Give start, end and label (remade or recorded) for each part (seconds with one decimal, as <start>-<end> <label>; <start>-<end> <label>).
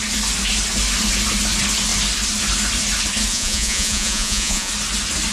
0.0-3.3 recorded; 3.3-4.7 remade; 4.7-5.3 recorded